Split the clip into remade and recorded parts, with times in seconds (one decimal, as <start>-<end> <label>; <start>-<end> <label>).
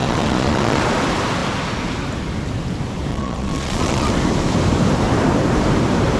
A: 0.0-0.8 remade; 0.8-3.1 recorded; 3.1-4.1 remade; 4.1-6.2 recorded